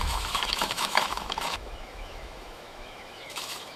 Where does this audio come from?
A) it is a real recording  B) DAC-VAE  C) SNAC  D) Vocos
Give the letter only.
B